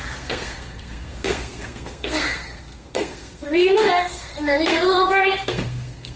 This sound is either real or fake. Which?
fake